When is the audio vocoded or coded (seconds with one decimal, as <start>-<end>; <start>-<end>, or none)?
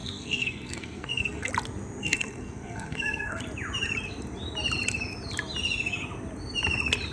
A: 0.0-1.5; 2.0-3.4